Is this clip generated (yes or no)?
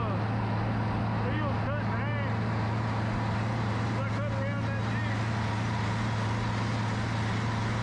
no